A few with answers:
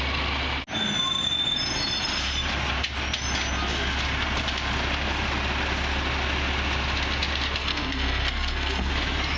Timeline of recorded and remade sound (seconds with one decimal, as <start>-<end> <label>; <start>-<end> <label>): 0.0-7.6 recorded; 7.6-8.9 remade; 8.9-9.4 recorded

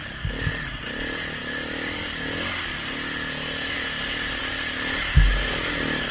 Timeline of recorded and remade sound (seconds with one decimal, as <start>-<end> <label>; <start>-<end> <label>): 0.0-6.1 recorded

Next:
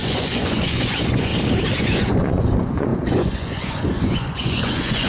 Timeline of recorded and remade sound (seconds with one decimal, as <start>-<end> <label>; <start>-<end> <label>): 0.0-1.3 remade; 1.3-1.8 recorded; 1.8-5.1 remade